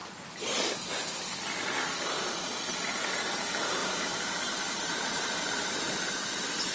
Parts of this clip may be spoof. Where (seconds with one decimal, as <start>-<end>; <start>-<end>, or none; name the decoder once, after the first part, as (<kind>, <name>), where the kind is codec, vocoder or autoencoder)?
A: 3.8-5.8 (vocoder, BigVGAN v2)